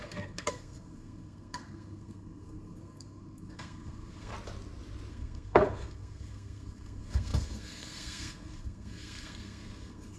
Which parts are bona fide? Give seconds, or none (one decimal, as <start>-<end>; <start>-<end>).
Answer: 4.3-5.1